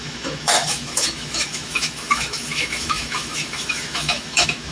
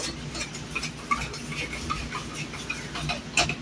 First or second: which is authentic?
second